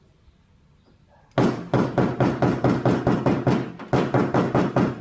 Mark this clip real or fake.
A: real